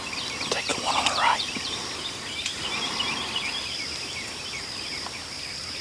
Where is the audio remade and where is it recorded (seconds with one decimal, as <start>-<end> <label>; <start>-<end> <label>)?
0.0-0.7 recorded; 0.7-1.9 remade; 1.9-5.8 recorded